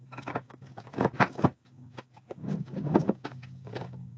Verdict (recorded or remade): remade